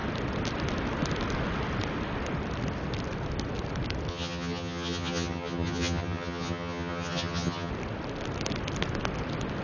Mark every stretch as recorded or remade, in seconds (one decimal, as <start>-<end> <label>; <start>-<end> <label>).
0.0-4.1 recorded; 4.1-7.7 remade; 7.7-9.6 recorded

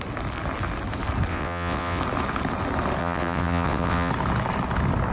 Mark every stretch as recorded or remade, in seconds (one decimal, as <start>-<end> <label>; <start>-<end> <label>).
0.0-1.3 recorded; 1.3-2.0 remade; 2.0-3.0 recorded; 3.0-4.1 remade; 4.1-5.1 recorded

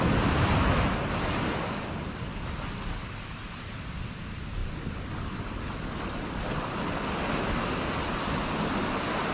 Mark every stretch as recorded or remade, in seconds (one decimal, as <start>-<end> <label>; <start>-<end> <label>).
0.0-9.3 recorded

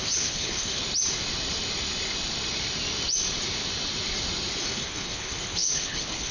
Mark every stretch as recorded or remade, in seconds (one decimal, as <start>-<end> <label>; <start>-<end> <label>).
0.0-0.8 remade; 0.8-4.6 recorded; 4.6-6.3 remade

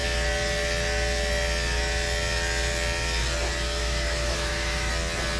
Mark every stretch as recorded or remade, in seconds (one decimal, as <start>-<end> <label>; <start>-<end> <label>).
0.0-3.8 recorded; 3.8-4.9 remade; 4.9-5.4 recorded

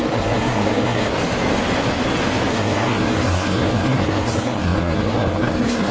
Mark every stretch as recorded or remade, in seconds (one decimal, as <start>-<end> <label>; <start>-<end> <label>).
0.0-1.1 remade; 1.1-2.5 recorded; 2.5-5.9 remade

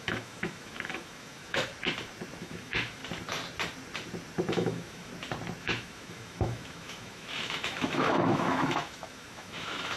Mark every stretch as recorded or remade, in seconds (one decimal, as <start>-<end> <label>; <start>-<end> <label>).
0.0-1.7 remade; 1.7-2.4 recorded; 2.4-3.0 remade; 3.0-4.5 recorded; 4.5-5.1 remade; 5.1-5.6 recorded; 5.6-10.0 remade

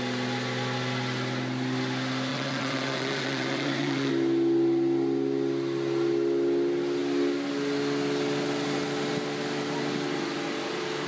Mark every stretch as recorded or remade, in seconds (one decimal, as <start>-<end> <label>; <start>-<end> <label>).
0.0-2.3 recorded; 2.3-4.1 remade; 4.1-11.1 recorded